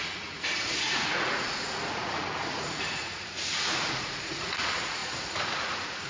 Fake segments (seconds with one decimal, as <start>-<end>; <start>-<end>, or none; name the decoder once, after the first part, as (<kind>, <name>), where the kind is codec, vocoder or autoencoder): 0.0-6.1 (vocoder, Vocos)